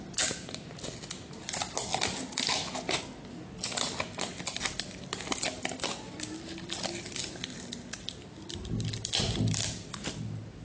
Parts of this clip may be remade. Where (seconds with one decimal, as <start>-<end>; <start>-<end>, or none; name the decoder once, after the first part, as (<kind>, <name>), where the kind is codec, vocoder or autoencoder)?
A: none